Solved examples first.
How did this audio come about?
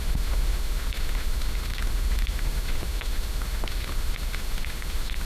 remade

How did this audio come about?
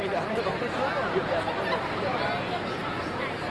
recorded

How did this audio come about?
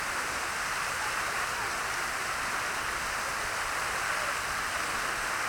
recorded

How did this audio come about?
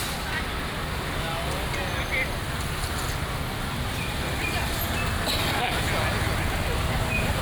recorded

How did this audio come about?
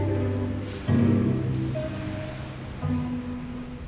recorded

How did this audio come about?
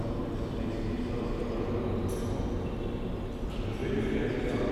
recorded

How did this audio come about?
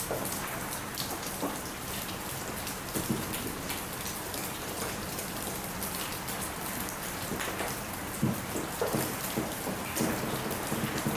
recorded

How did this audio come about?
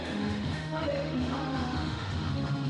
remade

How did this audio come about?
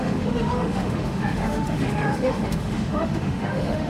remade